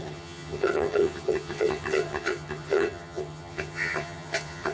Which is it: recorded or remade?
remade